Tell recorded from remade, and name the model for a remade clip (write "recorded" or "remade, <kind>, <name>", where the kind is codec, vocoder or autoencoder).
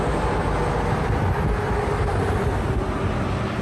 recorded